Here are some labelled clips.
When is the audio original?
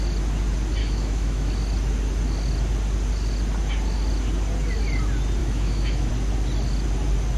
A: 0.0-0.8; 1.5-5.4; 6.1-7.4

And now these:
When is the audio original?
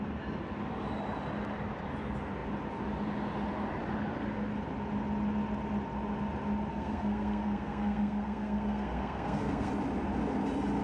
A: 0.0-6.7; 9.7-10.8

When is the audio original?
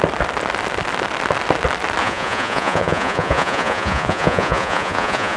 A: 0.0-2.0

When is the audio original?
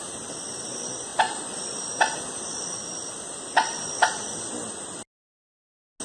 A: 0.0-1.1; 1.6-6.0